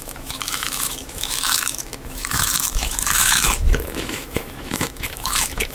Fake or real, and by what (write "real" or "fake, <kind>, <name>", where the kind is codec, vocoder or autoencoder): fake, autoencoder, DAC-VAE